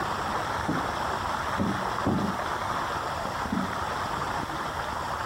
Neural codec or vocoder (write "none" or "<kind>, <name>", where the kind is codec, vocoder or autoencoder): none